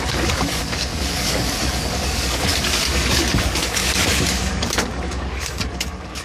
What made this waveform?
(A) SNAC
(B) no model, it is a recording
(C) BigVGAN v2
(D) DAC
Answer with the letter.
D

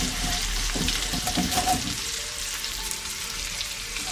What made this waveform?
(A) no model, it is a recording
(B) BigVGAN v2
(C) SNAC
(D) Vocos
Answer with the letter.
B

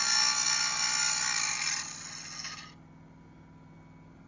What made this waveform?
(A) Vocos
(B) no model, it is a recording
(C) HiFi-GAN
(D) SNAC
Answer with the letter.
B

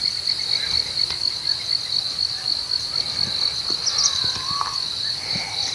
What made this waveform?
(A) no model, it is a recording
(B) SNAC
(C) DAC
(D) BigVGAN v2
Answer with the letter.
A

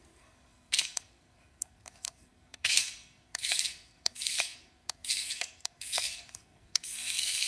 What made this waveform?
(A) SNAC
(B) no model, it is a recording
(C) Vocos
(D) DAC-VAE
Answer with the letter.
A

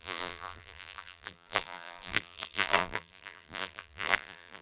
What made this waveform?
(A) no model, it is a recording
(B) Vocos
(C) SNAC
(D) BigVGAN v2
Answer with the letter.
D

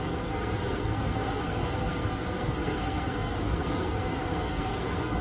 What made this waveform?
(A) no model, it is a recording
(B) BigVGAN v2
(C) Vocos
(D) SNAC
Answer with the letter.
D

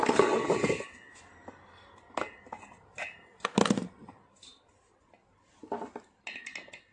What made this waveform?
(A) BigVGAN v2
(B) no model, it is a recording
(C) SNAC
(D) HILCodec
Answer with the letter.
B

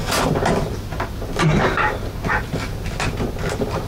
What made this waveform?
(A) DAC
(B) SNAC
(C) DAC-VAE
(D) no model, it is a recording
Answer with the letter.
D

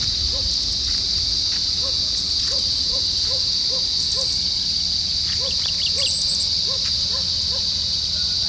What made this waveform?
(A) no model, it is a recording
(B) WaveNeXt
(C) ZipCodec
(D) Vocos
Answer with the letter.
A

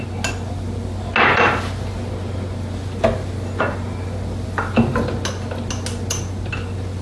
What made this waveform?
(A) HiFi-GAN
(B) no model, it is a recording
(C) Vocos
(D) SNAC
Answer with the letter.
B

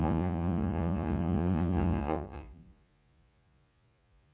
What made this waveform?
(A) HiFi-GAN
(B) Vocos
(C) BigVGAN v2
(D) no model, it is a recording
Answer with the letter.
B